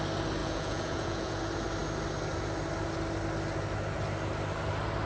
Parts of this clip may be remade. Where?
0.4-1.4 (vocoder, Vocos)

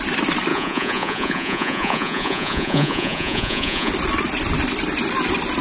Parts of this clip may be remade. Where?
0.5-3.9 (vocoder, Vocos)

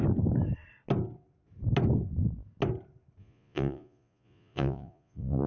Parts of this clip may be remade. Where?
3.2-5.5 (vocoder, Vocos)

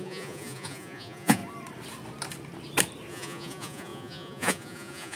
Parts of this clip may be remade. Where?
0.0-1.4 (vocoder, Vocos); 3.1-5.2

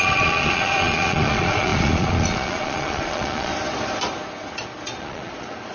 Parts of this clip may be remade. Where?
0.0-3.5 (vocoder, Vocos); 5.0-5.7

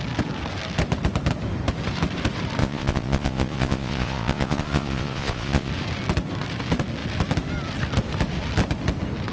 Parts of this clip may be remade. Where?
2.6-5.7 (vocoder, Vocos)

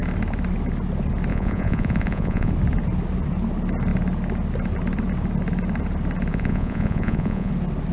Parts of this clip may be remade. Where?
1.3-2.5 (vocoder, Vocos); 6.3-7.5

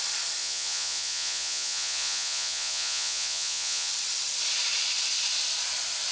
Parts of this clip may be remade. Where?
0.4-3.9 (vocoder, Vocos)